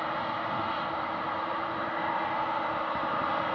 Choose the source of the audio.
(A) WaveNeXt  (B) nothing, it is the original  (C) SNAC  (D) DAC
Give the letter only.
B